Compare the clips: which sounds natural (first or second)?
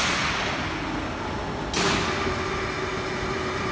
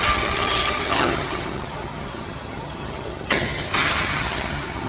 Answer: first